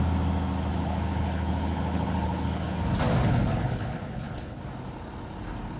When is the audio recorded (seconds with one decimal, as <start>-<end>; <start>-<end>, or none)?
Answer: 0.0-0.7; 2.8-3.2; 4.6-5.8